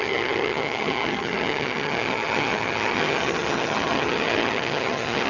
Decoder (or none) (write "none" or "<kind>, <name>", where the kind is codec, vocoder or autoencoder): vocoder, HiFi-GAN